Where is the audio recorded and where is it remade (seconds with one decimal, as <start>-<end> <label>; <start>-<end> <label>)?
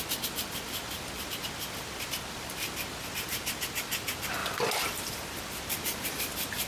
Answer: 0.0-4.4 recorded; 4.4-6.7 remade